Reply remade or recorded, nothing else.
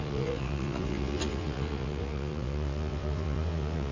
remade